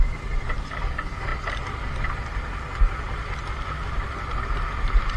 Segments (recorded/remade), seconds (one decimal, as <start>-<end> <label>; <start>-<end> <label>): 0.0-5.2 recorded